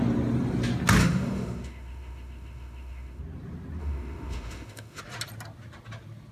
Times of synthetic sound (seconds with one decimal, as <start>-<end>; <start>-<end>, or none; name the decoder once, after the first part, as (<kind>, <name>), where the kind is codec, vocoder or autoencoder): 1.0-3.2 (autoencoder, DAC-VAE); 3.8-5.0